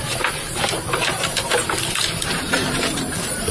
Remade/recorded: remade